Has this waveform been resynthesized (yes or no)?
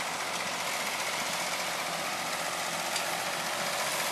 no